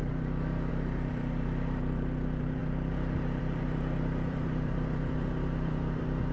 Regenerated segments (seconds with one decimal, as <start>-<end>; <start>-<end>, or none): 0.0-6.3